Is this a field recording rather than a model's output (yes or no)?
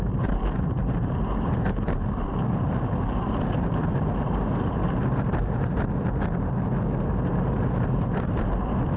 no